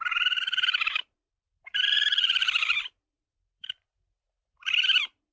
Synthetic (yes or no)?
yes